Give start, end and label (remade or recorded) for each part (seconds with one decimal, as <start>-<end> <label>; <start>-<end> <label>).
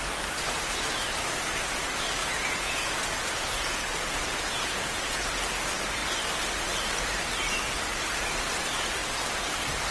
0.0-2.2 recorded; 2.2-5.3 remade; 5.3-9.9 recorded